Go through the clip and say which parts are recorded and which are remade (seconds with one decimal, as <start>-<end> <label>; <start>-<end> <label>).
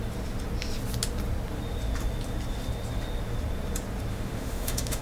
0.0-4.1 recorded; 4.1-5.0 remade